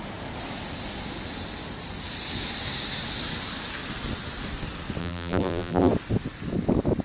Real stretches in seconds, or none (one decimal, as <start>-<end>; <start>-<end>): 0.0-5.0; 5.9-7.0